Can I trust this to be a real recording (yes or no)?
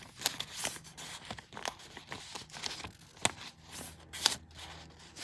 yes